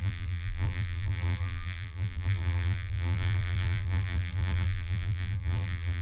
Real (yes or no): no